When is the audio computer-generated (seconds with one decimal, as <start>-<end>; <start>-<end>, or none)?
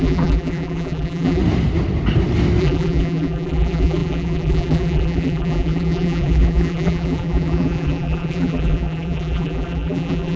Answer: 0.0-1.4; 2.6-10.4